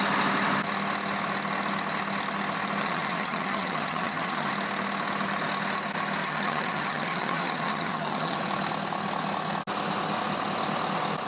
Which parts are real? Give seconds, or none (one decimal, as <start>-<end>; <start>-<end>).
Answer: 0.0-2.8; 4.5-6.2; 8.4-11.3